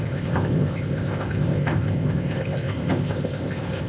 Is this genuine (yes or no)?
no